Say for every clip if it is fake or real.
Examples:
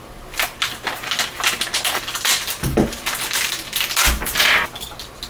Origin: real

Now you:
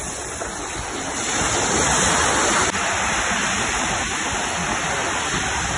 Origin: real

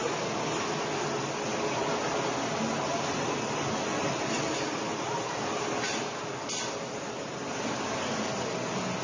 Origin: real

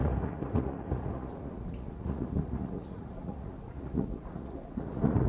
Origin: fake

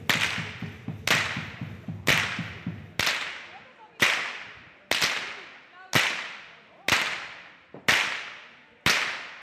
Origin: real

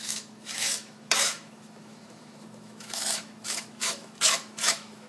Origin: fake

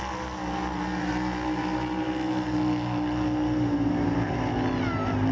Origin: real